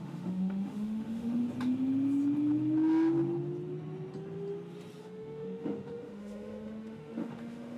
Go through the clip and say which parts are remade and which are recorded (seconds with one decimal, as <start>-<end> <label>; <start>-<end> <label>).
0.0-1.4 remade; 1.4-5.0 recorded; 5.0-7.8 remade